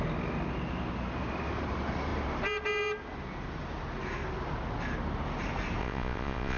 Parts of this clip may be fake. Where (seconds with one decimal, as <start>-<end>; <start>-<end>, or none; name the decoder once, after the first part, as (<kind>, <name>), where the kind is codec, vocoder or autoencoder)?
5.8-6.6 (vocoder, Vocos)